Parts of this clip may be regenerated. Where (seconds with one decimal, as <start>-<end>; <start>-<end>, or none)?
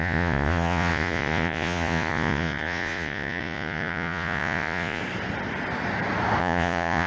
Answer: 0.0-5.0; 6.4-7.1